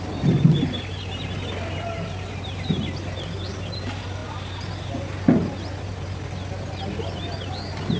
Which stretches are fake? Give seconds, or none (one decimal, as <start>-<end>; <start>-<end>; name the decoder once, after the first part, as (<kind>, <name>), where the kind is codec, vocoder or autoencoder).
none